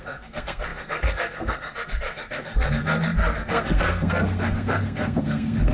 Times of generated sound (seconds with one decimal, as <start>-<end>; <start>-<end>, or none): 0.0-5.7